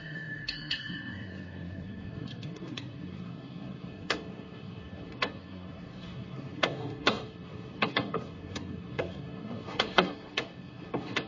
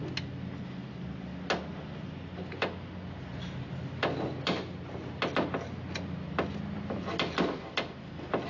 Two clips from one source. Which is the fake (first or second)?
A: first